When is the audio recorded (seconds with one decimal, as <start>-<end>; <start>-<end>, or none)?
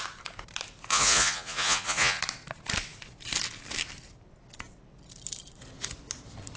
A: 0.0-0.9; 2.2-6.6